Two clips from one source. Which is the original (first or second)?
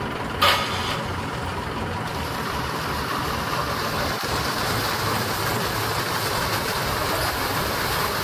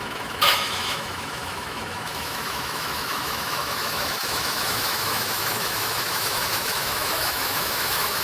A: first